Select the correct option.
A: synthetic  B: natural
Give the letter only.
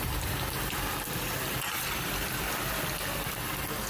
A